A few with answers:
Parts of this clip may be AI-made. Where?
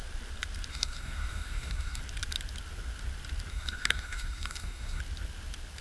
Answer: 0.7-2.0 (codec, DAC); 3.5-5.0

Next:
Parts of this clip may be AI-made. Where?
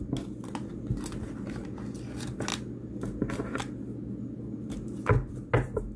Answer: none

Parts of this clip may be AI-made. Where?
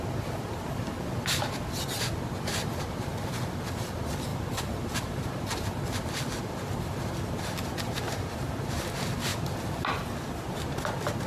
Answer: 4.3-5.3 (vocoder, BigVGAN v2)